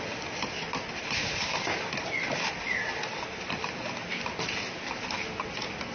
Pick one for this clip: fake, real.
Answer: real